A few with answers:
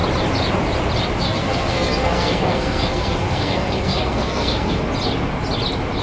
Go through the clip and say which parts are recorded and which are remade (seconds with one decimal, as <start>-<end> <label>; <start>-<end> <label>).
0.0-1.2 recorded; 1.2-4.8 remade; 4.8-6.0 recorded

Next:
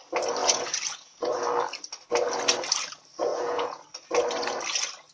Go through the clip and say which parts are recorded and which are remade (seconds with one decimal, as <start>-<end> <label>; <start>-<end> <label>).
0.0-0.4 recorded; 0.4-1.3 remade; 1.3-3.3 recorded; 3.3-3.8 remade; 3.8-5.1 recorded

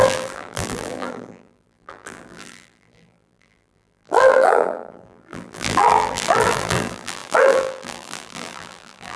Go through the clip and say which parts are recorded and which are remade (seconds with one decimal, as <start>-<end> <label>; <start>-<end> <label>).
0.0-9.2 remade

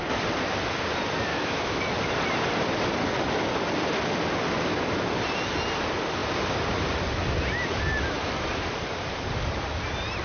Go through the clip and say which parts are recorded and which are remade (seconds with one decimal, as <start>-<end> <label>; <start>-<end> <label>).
0.0-1.3 recorded; 1.3-1.8 remade; 1.8-10.2 recorded